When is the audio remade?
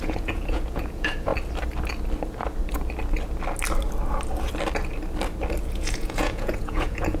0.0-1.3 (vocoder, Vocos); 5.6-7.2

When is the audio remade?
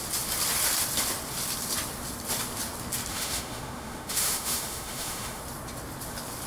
3.1-5.4 (autoencoder, DAC-VAE)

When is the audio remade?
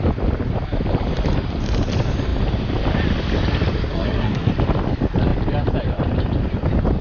3.9-4.5 (codec, SNAC)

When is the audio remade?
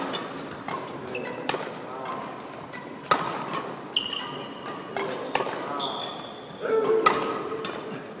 none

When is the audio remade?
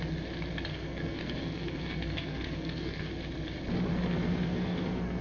0.7-3.1 (codec, SNAC); 3.9-5.2